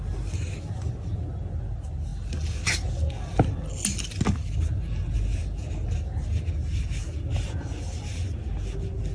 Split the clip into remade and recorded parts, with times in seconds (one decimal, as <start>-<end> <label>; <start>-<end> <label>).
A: 0.0-9.1 recorded